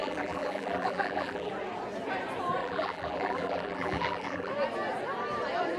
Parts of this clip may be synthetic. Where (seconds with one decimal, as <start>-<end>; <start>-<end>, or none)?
0.0-1.5; 2.6-4.5